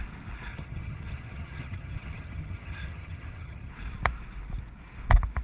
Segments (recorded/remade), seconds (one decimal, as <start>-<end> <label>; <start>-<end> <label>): 0.0-0.5 recorded; 0.5-3.7 remade; 3.7-5.4 recorded